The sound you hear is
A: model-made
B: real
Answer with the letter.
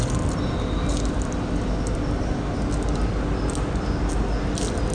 B